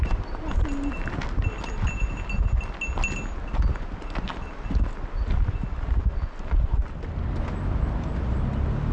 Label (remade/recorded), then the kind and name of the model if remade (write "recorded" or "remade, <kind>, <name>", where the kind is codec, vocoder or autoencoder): recorded